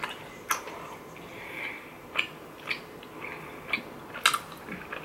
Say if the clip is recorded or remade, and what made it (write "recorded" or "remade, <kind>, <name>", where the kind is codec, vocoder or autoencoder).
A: recorded